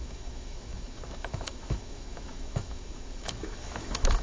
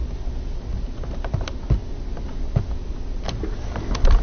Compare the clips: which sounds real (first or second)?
second